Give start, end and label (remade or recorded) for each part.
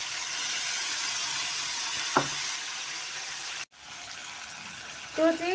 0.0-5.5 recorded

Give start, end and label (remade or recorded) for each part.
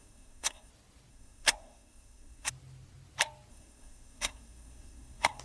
0.0-0.7 remade; 0.7-1.1 recorded; 1.1-2.5 remade; 2.5-3.5 recorded; 3.5-5.4 remade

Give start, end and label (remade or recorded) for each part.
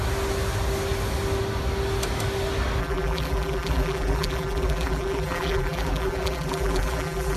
0.0-2.8 recorded; 2.8-7.4 remade